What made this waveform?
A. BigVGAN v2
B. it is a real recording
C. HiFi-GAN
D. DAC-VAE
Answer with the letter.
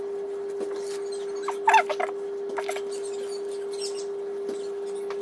B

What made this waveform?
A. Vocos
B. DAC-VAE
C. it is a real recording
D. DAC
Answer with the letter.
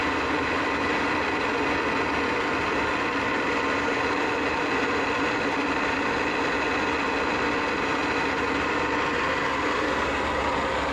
C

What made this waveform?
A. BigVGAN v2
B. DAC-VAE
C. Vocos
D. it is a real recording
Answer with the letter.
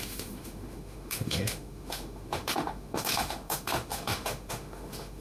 B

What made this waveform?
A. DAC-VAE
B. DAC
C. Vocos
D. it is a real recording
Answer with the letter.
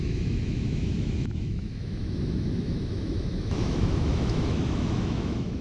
A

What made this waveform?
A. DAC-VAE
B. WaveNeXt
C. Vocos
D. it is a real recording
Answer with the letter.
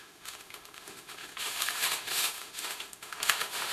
A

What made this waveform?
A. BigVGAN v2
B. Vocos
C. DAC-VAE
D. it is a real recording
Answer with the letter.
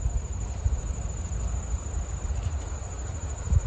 D